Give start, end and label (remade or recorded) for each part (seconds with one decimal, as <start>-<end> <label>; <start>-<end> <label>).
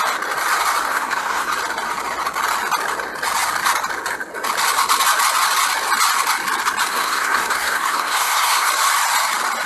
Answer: 0.0-0.9 recorded; 0.9-1.5 remade; 1.5-6.9 recorded; 6.9-8.7 remade; 8.7-9.7 recorded